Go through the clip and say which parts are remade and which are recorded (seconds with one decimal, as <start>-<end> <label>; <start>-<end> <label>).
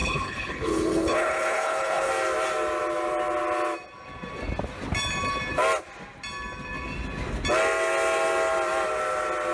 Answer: 0.0-2.1 remade; 2.1-9.5 recorded